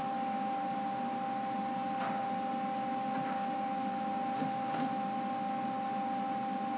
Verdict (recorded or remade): recorded